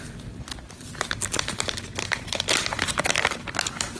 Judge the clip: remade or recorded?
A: recorded